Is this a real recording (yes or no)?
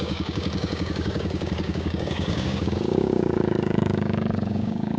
no